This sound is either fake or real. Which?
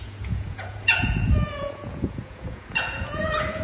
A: fake